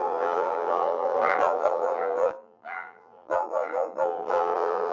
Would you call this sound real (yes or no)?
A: no